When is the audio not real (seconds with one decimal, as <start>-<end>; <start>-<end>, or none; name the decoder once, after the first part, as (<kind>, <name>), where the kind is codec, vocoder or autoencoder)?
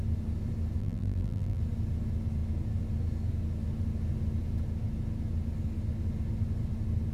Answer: 0.8-1.6 (vocoder, BigVGAN v2)